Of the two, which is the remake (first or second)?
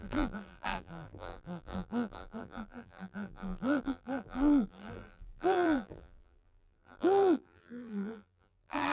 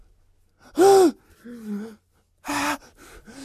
first